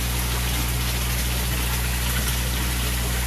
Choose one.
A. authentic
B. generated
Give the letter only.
B